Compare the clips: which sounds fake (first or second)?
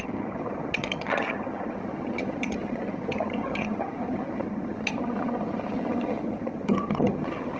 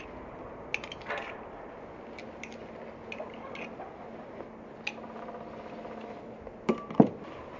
first